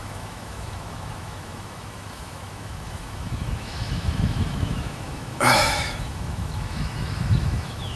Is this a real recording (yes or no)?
no